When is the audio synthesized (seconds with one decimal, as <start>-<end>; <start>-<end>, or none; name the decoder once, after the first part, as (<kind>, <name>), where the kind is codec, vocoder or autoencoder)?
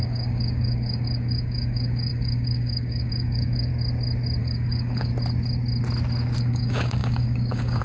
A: 0.0-3.7 (codec, DAC); 4.4-5.1; 6.4-7.8